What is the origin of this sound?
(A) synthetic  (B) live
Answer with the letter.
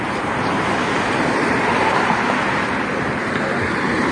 A